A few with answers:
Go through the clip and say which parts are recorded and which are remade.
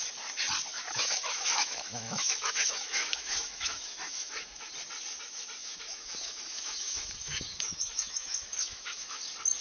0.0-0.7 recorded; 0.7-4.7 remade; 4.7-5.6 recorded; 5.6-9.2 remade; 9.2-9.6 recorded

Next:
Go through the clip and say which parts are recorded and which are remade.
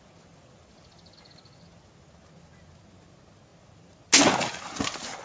0.0-5.2 recorded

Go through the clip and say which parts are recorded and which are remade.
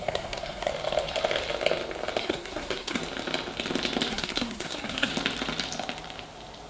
0.0-0.7 remade; 0.7-2.2 recorded; 2.2-3.0 remade; 3.0-4.1 recorded; 4.1-5.1 remade; 5.1-6.7 recorded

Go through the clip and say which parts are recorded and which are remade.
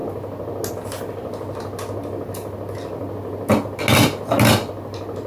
0.0-5.3 recorded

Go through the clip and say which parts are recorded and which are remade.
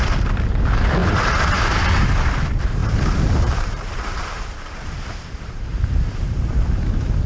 0.0-1.0 recorded; 1.0-2.3 remade; 2.3-2.8 recorded; 2.8-6.7 remade; 6.7-7.3 recorded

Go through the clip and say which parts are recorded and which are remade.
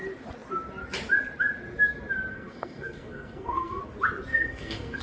0.0-2.3 recorded; 2.3-3.8 remade; 3.8-4.3 recorded; 4.3-5.0 remade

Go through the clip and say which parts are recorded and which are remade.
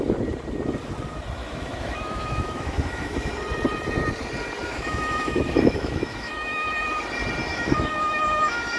0.0-1.4 recorded; 1.4-3.3 remade; 3.3-4.6 recorded; 4.6-6.7 remade; 6.7-7.5 recorded; 7.5-8.8 remade